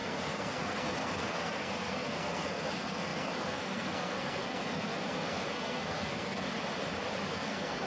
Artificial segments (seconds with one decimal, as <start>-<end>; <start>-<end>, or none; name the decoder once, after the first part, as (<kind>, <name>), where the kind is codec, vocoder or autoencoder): 0.0-6.5 (codec, SNAC); 7.3-7.9